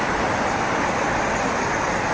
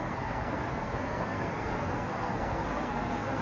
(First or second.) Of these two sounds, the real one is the first